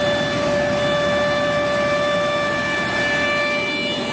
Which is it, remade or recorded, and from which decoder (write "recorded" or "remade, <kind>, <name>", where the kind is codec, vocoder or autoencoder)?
recorded